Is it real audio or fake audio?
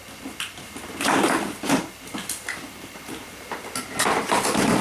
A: fake